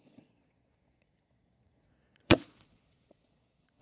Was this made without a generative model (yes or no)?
no